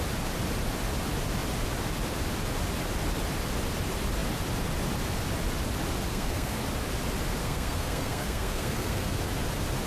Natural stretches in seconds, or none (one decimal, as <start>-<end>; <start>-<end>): 0.0-6.1; 6.6-7.4; 9.2-9.9